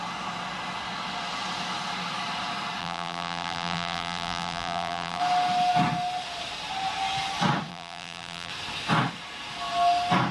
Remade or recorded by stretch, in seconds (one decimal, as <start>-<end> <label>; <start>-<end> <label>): 0.0-2.8 recorded; 2.8-5.2 remade; 5.2-7.7 recorded; 7.7-8.5 remade; 8.5-10.3 recorded